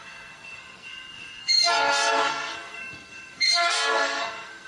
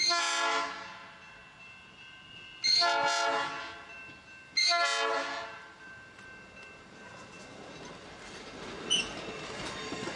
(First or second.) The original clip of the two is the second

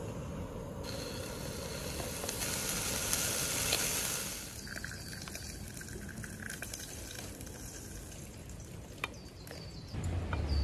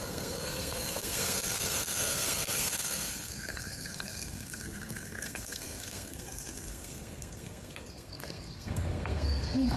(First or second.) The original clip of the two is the first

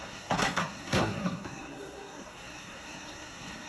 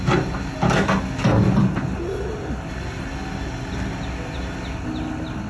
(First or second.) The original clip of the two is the second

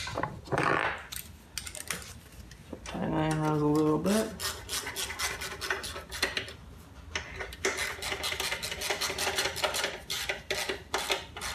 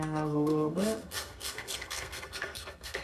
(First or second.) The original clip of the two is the first